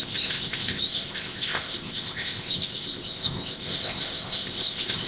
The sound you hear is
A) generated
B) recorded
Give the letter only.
A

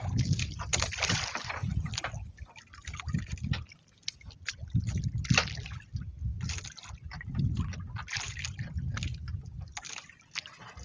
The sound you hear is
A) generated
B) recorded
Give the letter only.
B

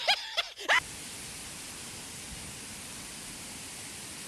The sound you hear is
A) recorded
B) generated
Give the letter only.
A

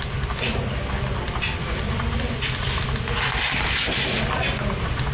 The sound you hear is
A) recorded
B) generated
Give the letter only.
A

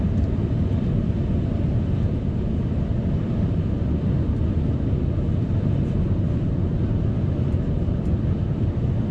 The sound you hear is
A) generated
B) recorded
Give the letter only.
B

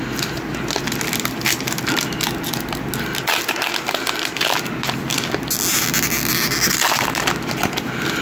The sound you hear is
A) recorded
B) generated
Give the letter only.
A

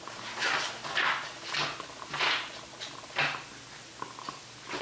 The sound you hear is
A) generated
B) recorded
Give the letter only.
B